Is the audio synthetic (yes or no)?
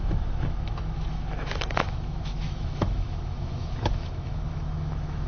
yes